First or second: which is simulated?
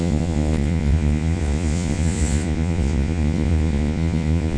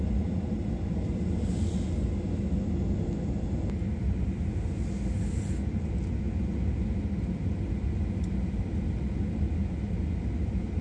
first